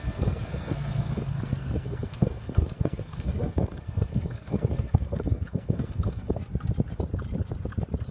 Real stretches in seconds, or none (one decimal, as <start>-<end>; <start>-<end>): 6.4-8.1